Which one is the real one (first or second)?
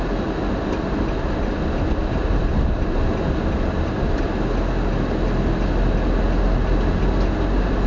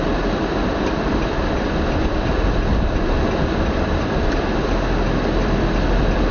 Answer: first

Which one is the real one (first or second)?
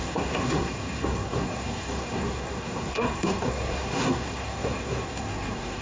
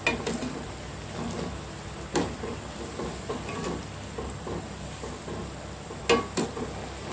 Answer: second